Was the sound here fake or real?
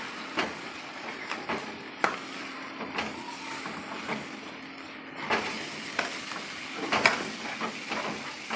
real